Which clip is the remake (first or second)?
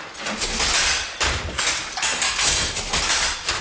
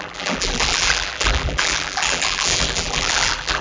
second